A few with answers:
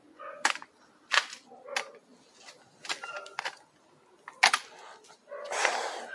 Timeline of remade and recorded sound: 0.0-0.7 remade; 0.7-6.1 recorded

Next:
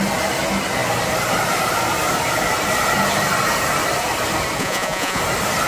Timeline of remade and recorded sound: 0.0-4.6 recorded; 4.6-5.2 remade; 5.2-5.7 recorded

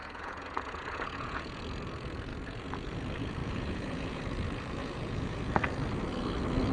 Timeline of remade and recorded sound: 0.0-1.6 remade; 1.6-3.4 recorded; 3.4-4.2 remade; 4.2-4.8 recorded; 4.8-5.4 remade; 5.4-6.7 recorded

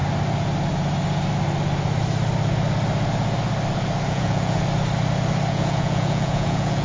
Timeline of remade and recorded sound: 0.0-4.1 recorded; 4.1-4.6 remade; 4.6-5.5 recorded; 5.5-6.8 remade

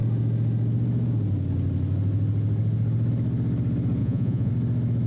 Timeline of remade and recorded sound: 0.0-4.0 recorded; 4.0-4.5 remade; 4.5-5.1 recorded

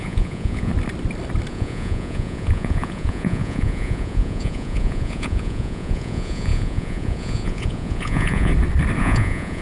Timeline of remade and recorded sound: 0.0-0.7 remade; 0.7-1.5 recorded; 1.5-8.5 remade; 8.5-9.0 recorded; 9.0-9.6 remade